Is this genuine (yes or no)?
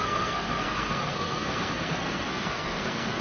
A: no